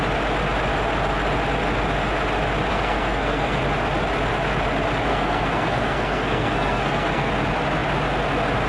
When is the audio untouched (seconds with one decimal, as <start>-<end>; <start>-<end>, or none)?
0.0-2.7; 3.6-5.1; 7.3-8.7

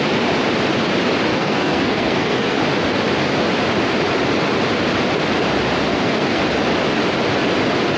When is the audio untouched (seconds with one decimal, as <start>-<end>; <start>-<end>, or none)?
0.0-1.3; 2.6-5.9; 6.4-8.0

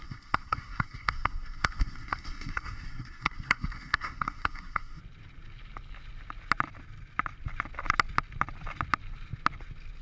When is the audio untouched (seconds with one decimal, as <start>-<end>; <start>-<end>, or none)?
5.0-10.0

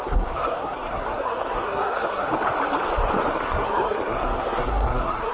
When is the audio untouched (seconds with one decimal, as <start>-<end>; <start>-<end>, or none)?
2.4-3.3

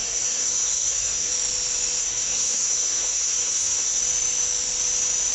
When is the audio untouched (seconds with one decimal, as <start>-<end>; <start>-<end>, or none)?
1.3-2.0; 4.0-5.3

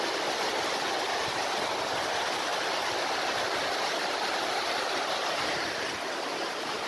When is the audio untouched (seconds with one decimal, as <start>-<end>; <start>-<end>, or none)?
0.0-6.9

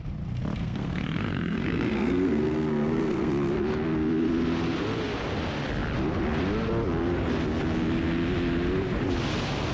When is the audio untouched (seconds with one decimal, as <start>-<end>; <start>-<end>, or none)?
0.0-0.6; 3.3-9.7

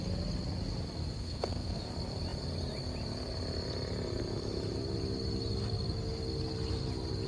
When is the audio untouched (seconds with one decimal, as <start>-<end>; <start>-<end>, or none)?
0.0-1.2; 1.8-7.3